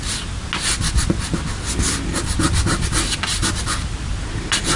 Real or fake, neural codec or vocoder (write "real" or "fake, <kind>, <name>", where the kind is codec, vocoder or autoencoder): real